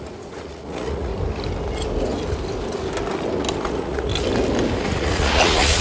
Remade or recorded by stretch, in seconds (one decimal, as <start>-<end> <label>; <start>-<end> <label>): 0.0-1.1 remade; 1.1-3.6 recorded; 3.6-4.1 remade; 4.1-4.8 recorded; 4.8-5.8 remade